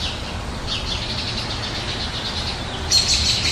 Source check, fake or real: real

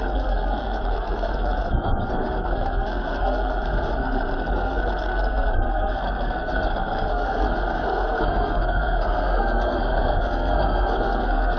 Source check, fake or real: fake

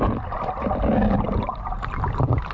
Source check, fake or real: real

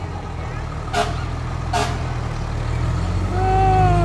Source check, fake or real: real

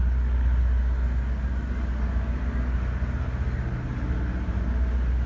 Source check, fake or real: real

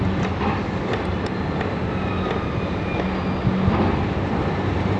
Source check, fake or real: real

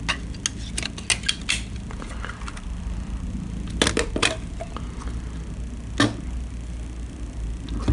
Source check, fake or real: real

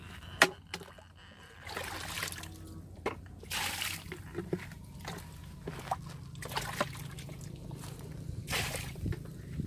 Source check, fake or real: real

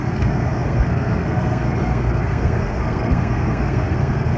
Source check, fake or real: fake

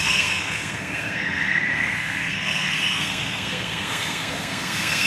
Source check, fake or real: fake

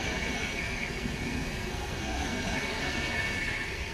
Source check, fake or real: fake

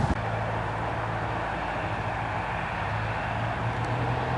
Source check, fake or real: real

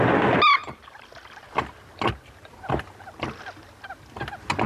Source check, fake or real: real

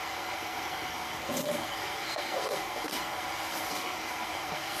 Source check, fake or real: fake